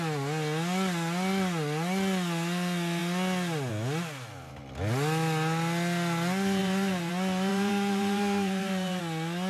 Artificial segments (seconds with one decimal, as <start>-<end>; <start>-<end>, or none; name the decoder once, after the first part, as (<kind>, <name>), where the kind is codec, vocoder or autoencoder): 6.6-7.1 (vocoder, BigVGAN v2); 7.5-9.0